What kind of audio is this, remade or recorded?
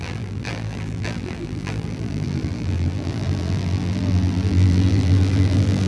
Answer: remade